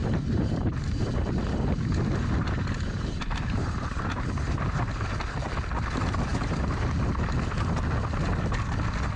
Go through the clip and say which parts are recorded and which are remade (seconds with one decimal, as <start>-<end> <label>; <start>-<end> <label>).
0.0-5.2 remade; 5.2-6.3 recorded; 6.3-7.0 remade; 7.0-9.2 recorded